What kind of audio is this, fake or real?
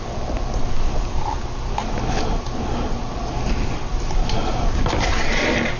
real